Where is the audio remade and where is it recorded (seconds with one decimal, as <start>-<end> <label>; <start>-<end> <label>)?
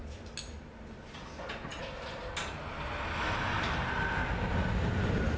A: 0.0-5.4 recorded